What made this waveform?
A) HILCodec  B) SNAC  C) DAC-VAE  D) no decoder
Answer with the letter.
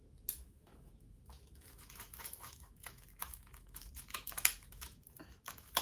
C